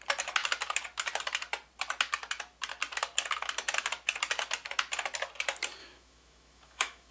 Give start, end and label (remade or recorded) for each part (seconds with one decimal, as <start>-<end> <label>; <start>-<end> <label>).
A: 0.0-5.8 recorded; 5.8-7.1 remade